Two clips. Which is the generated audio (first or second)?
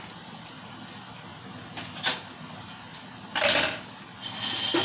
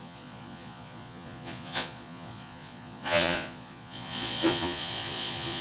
second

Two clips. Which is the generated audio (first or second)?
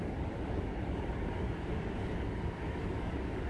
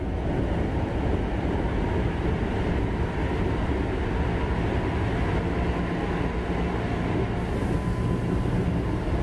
first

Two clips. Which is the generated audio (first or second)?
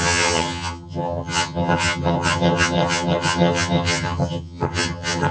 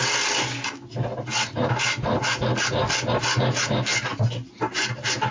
first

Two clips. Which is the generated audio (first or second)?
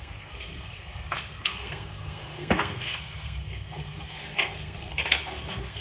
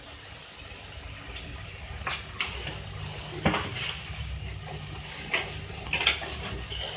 first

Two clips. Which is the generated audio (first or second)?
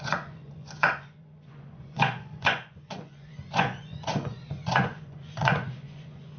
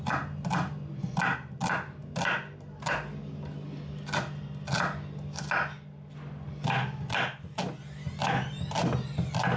first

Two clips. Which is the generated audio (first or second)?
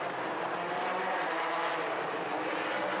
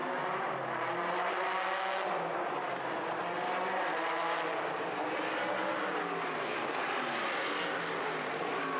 first